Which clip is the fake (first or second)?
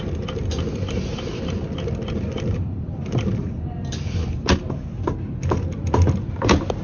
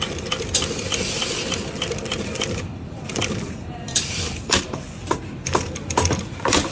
second